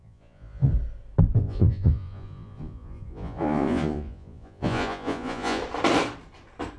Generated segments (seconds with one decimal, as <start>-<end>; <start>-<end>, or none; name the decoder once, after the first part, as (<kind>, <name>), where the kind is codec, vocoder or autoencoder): 0.0-0.7 (vocoder, Vocos); 1.4-5.6